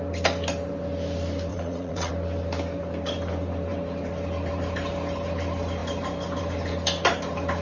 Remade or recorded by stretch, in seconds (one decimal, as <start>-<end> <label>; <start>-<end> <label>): 0.0-1.5 recorded; 1.5-2.1 remade; 2.1-7.6 recorded

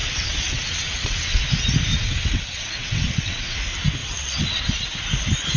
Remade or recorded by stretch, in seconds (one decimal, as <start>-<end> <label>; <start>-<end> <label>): 0.0-1.4 remade; 1.4-1.9 recorded; 1.9-3.6 remade; 3.6-4.0 recorded; 4.0-4.6 remade; 4.6-5.6 recorded

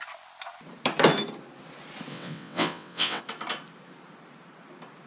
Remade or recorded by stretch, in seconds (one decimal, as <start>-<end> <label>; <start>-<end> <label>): 0.0-2.1 recorded; 2.1-3.2 remade; 3.2-5.1 recorded